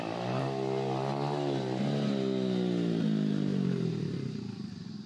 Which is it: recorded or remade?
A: recorded